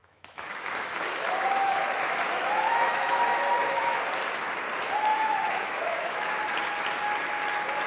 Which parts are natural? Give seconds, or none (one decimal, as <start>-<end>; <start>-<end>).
4.0-5.1; 6.3-7.9